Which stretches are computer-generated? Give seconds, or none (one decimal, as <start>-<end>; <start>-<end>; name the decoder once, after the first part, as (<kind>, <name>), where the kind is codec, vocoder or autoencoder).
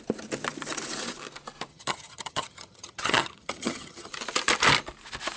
1.7-4.1 (vocoder, HiFi-GAN)